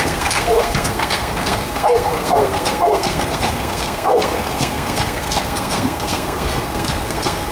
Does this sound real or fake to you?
fake